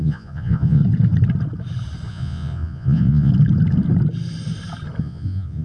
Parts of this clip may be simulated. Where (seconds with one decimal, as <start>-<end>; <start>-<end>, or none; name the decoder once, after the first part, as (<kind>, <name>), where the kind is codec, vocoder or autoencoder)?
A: 0.0-0.8 (vocoder, Vocos); 2.1-3.3; 5.0-5.6